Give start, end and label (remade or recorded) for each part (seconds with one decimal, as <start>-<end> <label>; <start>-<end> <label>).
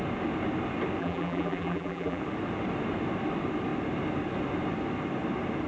0.0-1.0 recorded; 1.0-2.2 remade; 2.2-5.7 recorded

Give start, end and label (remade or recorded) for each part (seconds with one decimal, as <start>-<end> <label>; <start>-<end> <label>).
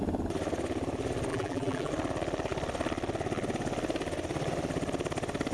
0.0-1.3 recorded; 1.3-1.9 remade; 1.9-5.5 recorded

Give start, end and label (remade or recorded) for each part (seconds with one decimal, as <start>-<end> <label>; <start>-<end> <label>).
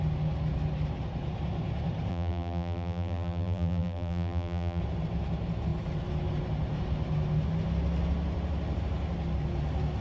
0.0-2.1 recorded; 2.1-4.8 remade; 4.8-10.0 recorded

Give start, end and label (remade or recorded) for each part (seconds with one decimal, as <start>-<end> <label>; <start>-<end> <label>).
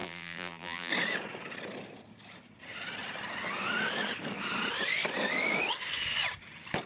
0.0-0.9 remade; 0.9-6.9 recorded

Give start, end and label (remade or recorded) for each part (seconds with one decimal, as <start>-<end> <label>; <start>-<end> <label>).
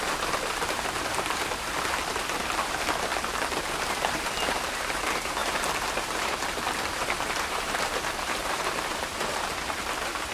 0.0-3.1 remade; 3.1-3.9 recorded; 3.9-10.3 remade